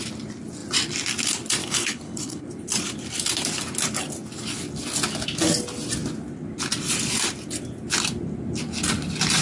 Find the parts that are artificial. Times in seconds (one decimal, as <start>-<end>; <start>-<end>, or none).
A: 1.6-2.4